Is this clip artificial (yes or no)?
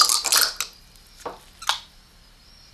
no